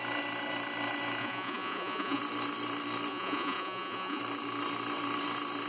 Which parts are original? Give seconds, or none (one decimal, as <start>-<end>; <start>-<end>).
0.0-1.2; 2.2-3.1; 4.2-5.7